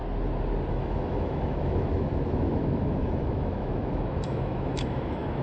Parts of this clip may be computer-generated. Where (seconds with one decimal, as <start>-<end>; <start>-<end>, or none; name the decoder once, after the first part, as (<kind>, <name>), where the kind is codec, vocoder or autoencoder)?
0.7-5.4 (autoencoder, DAC-VAE)